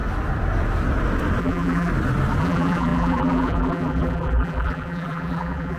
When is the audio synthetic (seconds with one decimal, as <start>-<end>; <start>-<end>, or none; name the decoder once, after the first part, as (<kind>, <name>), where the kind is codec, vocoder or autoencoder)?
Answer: 1.4-1.9 (vocoder, BigVGAN v2); 2.4-5.8